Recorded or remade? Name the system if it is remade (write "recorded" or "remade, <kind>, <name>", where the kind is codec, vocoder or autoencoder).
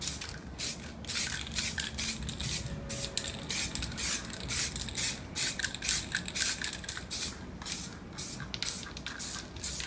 recorded